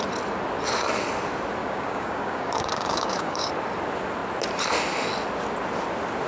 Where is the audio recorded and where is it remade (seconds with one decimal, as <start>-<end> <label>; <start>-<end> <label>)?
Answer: 0.0-1.6 recorded; 1.6-3.5 remade; 3.5-6.3 recorded